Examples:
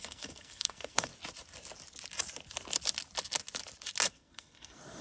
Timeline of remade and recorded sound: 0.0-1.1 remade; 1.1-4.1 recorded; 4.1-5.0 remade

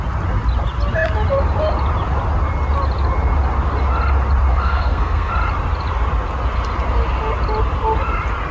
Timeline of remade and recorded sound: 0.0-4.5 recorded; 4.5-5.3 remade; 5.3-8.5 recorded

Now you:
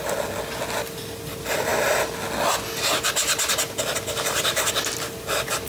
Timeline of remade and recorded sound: 0.0-5.7 recorded

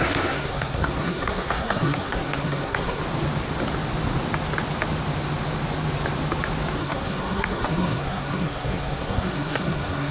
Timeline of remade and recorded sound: 0.0-3.0 remade; 3.0-6.8 recorded; 6.8-10.1 remade